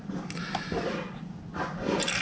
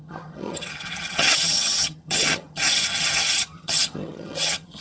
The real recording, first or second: first